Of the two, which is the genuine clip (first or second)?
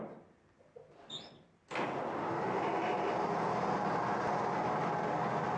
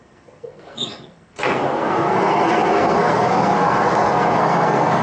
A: first